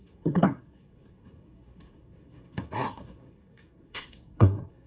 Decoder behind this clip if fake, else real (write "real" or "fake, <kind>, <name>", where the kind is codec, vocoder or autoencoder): fake, codec, SNAC